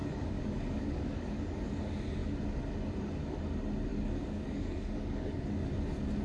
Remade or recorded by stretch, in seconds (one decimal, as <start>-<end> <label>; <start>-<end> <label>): 0.0-1.7 remade; 1.7-3.9 recorded; 3.9-5.7 remade; 5.7-6.2 recorded